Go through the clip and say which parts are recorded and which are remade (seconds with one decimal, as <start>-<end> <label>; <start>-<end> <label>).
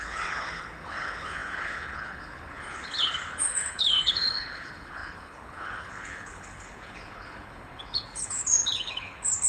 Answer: 0.0-9.5 remade